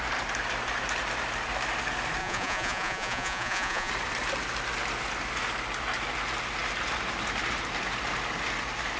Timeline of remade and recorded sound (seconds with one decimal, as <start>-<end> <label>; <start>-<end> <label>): 0.0-2.2 recorded; 2.2-3.9 remade; 3.9-9.0 recorded